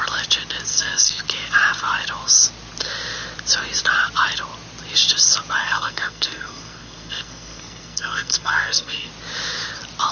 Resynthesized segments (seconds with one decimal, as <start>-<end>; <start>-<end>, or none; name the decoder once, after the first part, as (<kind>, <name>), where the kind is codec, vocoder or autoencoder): 0.7-1.2 (codec, SNAC); 5.6-9.1